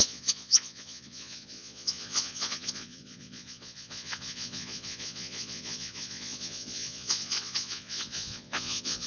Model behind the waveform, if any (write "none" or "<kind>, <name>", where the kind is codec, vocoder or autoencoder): vocoder, Vocos